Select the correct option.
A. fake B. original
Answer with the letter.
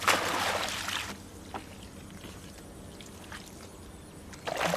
B